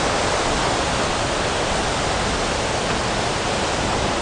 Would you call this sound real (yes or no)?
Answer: yes